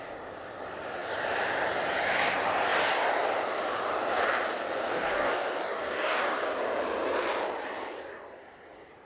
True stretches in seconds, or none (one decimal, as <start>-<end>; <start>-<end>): 0.0-4.9; 6.5-9.1